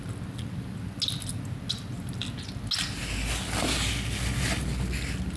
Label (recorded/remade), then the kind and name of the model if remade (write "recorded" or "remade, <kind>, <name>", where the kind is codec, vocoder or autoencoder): recorded